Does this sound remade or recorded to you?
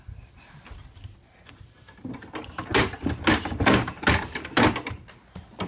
recorded